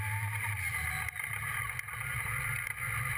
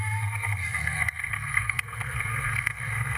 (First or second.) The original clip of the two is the first